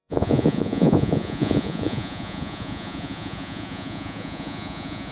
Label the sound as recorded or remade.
remade